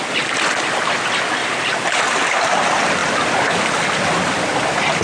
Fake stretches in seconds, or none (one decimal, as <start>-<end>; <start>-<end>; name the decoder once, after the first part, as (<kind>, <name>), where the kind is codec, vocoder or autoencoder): 1.4-2.0 (vocoder, BigVGAN v2)